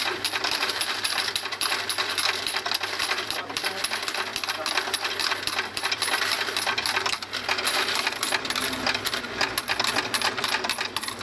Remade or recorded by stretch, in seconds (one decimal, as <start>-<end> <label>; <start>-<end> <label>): 0.0-11.2 remade